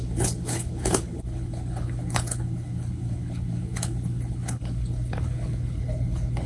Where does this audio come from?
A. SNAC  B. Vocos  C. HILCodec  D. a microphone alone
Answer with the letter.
C